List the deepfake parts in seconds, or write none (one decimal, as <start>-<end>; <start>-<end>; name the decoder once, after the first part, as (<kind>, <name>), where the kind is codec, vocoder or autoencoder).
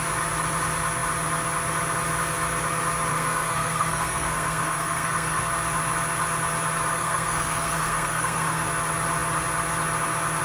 3.1-5.5 (codec, SNAC); 6.9-8.7